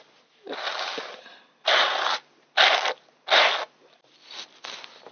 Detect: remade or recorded recorded